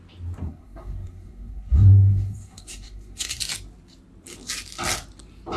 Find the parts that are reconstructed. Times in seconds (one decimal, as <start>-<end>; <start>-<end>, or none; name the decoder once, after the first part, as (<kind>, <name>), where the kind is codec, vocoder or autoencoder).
0.4-3.4 (codec, SNAC)